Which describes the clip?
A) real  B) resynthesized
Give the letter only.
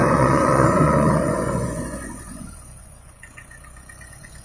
B